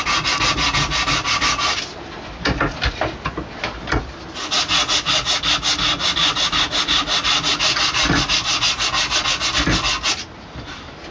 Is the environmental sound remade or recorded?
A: recorded